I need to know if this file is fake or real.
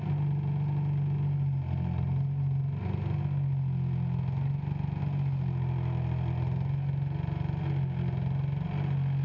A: real